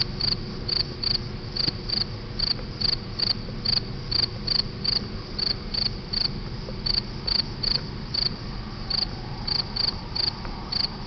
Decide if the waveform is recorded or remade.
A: recorded